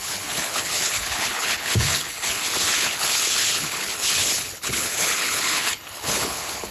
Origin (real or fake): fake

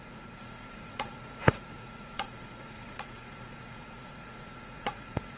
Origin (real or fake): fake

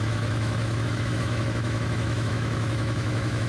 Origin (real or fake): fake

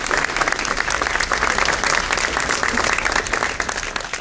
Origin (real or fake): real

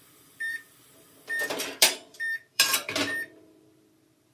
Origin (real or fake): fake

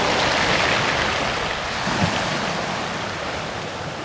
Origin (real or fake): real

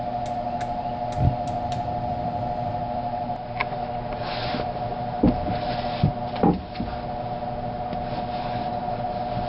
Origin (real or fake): real